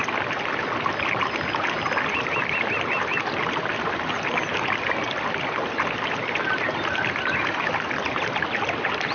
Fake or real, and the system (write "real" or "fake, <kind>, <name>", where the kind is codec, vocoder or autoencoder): real